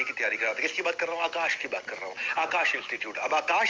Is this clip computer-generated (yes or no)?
no